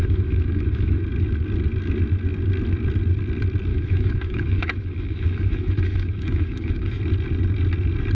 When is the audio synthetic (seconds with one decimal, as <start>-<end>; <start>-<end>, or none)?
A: 0.0-1.0; 3.7-7.0